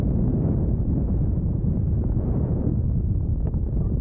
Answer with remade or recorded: remade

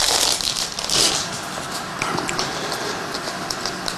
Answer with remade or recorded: remade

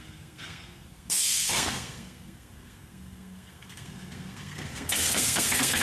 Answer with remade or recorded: remade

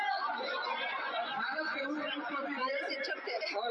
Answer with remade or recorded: remade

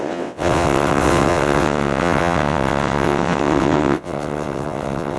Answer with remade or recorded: remade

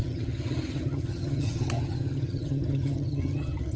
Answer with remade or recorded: remade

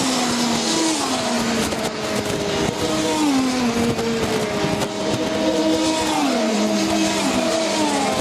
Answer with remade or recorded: recorded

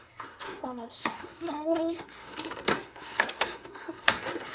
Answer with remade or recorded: remade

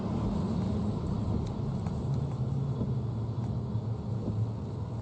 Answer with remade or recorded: recorded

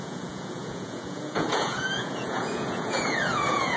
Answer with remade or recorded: remade